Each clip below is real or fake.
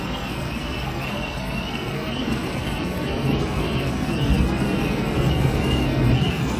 fake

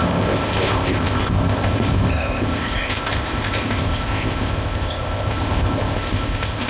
fake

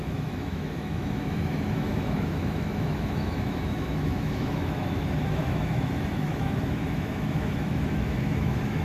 fake